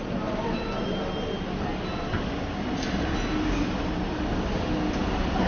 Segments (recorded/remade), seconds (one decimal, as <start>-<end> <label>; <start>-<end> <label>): 0.0-5.5 recorded